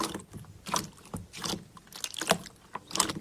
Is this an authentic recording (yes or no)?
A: yes